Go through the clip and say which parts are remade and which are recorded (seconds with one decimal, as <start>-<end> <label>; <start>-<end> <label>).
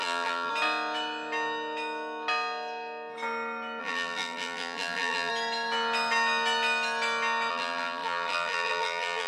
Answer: 0.0-0.5 remade; 0.5-3.8 recorded; 3.8-5.3 remade; 5.3-7.5 recorded; 7.5-9.3 remade